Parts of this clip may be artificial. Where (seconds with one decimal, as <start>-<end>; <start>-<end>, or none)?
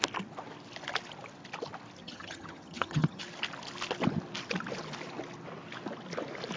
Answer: 2.0-3.2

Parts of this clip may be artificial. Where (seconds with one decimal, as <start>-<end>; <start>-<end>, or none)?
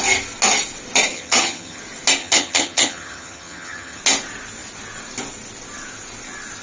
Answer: 1.1-1.8; 2.2-4.0